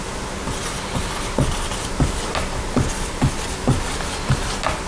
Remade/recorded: remade